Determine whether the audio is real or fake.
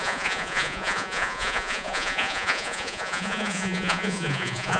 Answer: fake